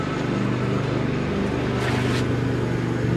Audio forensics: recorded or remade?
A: recorded